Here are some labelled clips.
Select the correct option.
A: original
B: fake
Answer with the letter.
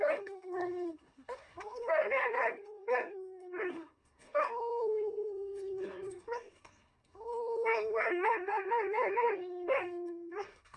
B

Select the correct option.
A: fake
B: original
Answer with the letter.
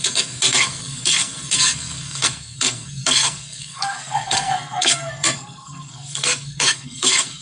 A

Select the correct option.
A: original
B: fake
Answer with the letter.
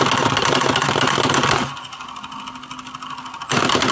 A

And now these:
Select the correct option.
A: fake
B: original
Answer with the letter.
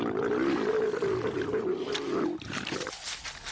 B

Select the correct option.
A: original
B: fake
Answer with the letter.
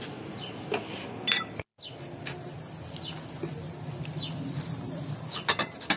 A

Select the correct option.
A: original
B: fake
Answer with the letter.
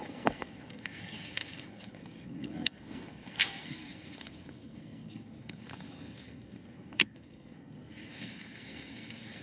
B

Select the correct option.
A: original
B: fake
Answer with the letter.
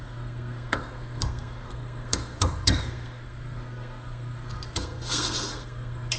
B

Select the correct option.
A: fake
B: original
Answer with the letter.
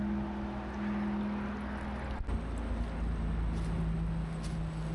B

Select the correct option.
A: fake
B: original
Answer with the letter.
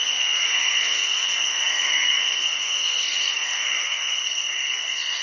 A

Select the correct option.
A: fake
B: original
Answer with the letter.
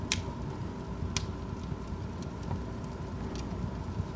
B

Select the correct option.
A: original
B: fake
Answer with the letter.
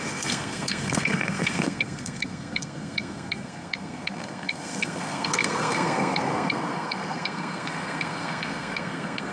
B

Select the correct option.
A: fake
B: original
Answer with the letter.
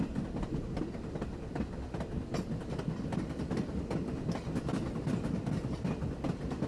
B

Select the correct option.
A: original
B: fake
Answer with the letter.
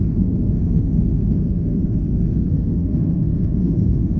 B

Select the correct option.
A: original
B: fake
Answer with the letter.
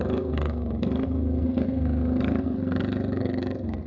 B